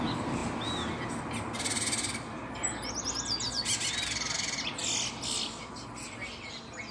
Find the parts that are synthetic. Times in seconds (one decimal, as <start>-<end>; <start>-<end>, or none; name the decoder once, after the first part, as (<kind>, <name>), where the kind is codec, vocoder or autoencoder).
none